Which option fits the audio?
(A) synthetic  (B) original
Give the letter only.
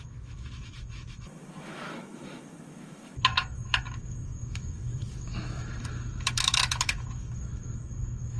A